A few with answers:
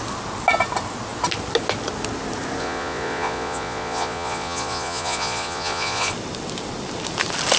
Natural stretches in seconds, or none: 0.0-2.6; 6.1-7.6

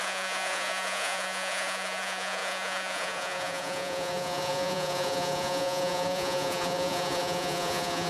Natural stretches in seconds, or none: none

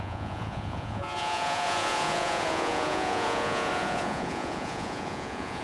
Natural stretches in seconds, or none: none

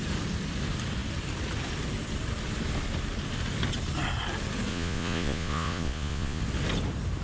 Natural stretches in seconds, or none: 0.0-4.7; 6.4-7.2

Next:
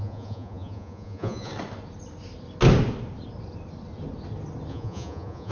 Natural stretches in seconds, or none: 1.5-4.7

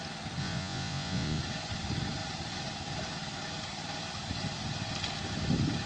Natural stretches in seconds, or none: 0.0-0.4; 1.4-5.9

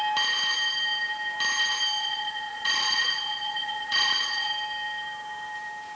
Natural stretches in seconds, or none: 0.0-2.0; 4.5-6.0